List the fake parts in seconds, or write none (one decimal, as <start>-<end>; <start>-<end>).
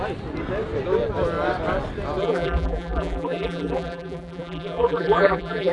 2.2-5.7